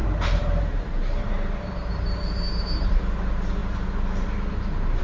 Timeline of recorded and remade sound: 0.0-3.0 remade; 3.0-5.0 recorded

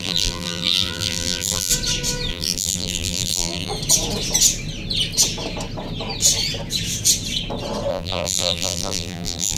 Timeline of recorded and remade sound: 0.0-1.7 remade; 1.7-2.3 recorded; 2.3-3.7 remade; 3.7-7.9 recorded; 7.9-9.6 remade

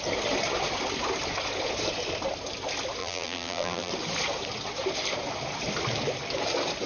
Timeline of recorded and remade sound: 0.0-3.0 recorded; 3.0-3.9 remade; 3.9-6.9 recorded

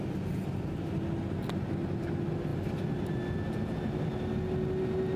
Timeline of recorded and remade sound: 0.0-2.5 recorded; 2.5-3.1 remade; 3.1-5.2 recorded

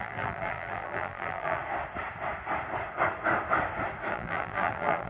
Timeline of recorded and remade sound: 0.0-1.6 remade; 1.6-4.1 recorded; 4.1-5.1 remade

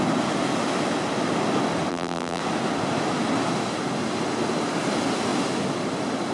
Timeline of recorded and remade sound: 0.0-1.9 recorded; 1.9-2.4 remade; 2.4-6.3 recorded